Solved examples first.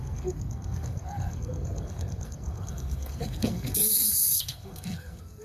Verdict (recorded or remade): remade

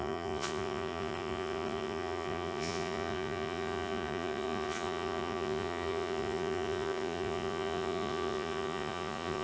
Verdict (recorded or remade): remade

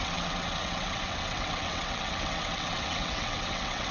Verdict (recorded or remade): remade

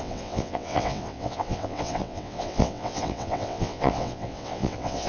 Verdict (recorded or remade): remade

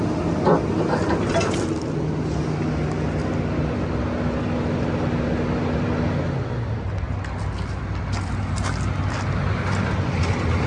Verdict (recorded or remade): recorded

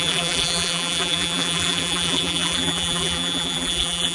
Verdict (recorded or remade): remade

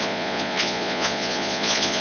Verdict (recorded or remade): remade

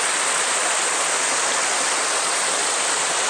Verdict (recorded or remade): recorded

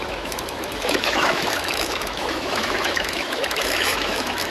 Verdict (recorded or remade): remade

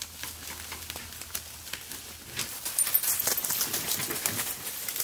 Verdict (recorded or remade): recorded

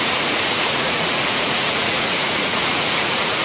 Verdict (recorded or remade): remade